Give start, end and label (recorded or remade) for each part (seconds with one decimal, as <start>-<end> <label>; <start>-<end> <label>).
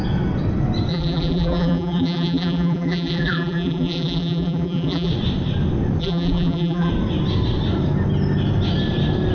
0.0-0.9 recorded; 0.9-5.1 remade; 5.1-6.0 recorded; 6.0-6.9 remade; 6.9-9.3 recorded